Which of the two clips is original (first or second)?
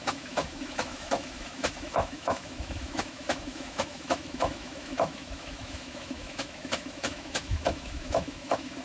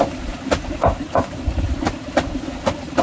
second